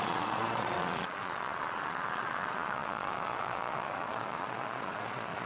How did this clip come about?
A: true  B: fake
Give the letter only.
B